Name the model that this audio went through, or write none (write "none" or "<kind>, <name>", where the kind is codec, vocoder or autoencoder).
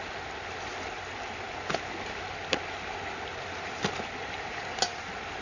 none